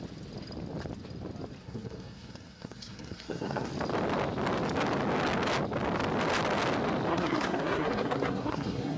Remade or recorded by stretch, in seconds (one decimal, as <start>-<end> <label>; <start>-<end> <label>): 0.0-1.6 recorded; 1.6-3.7 remade; 3.7-7.1 recorded; 7.1-9.0 remade